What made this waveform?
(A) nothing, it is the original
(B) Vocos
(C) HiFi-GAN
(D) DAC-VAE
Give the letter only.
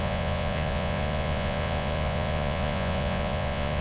B